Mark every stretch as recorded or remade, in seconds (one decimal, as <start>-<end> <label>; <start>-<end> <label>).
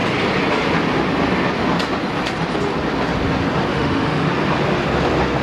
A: 0.0-3.7 recorded; 3.7-4.3 remade; 4.3-5.4 recorded